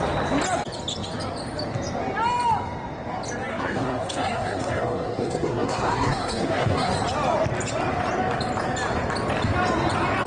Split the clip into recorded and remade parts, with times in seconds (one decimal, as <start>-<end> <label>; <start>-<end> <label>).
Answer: 0.0-3.5 recorded; 3.5-6.9 remade; 6.9-10.3 recorded